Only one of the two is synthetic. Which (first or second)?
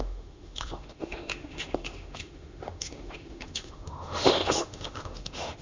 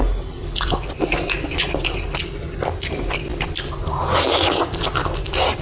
first